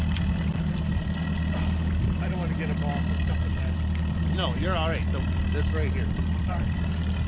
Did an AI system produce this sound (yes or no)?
no